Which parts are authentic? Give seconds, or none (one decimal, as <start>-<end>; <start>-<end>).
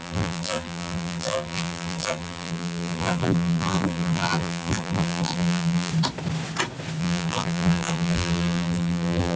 5.9-7.0